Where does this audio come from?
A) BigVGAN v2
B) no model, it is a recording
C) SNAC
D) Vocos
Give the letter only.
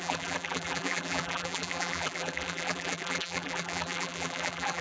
A